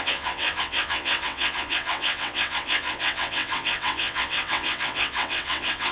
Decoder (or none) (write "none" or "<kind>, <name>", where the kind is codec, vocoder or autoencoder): vocoder, WaveNeXt